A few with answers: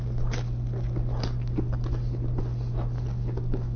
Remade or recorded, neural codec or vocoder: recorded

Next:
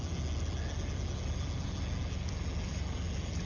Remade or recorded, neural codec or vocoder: recorded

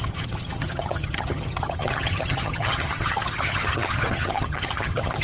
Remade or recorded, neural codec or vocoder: remade, vocoder, HiFi-GAN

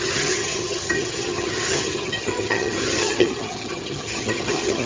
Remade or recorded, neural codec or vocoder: remade, vocoder, HiFi-GAN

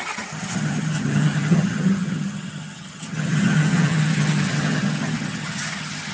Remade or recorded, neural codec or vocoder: remade, vocoder, HiFi-GAN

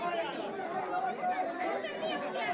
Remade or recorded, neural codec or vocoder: recorded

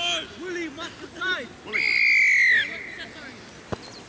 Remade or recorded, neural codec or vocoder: recorded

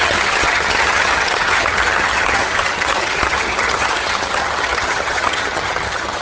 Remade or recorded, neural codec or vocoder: remade, vocoder, HiFi-GAN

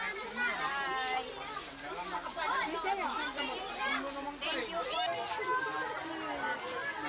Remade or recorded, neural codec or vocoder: recorded